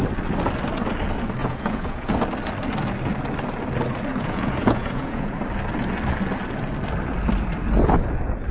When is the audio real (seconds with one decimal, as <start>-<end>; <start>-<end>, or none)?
0.0-1.4; 2.2-4.1; 5.4-8.5